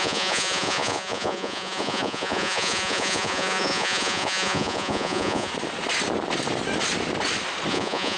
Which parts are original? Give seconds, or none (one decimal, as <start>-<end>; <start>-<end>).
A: 5.5-7.7